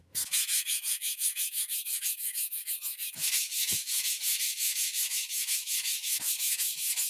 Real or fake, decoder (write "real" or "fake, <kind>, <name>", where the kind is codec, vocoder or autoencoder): fake, autoencoder, DAC-VAE